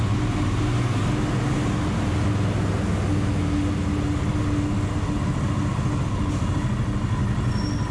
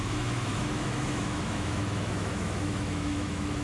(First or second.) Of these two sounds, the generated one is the second